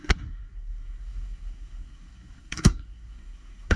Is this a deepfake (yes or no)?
yes